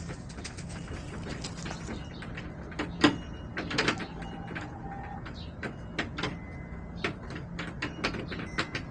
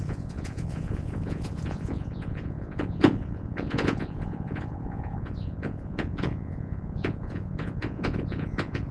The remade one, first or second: second